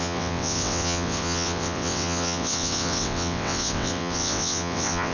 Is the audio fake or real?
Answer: fake